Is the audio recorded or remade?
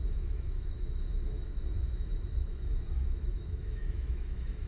remade